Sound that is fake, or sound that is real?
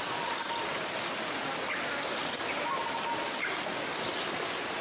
real